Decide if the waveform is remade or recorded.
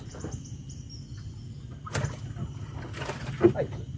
recorded